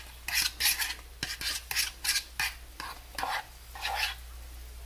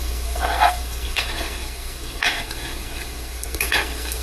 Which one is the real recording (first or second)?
first